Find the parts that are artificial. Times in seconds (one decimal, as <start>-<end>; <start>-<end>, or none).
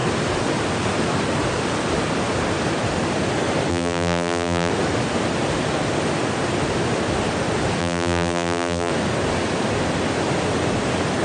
3.7-4.7; 7.8-8.9